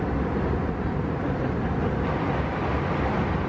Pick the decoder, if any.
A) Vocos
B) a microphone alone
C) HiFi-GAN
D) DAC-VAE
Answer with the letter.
B